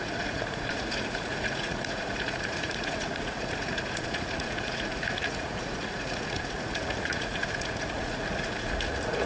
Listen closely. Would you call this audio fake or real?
fake